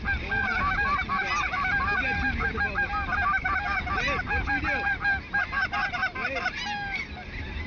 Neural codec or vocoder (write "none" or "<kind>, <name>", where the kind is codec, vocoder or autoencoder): none